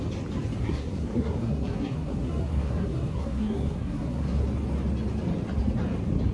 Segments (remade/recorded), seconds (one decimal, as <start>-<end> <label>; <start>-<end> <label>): 0.0-0.6 recorded; 0.6-4.4 remade; 4.4-6.3 recorded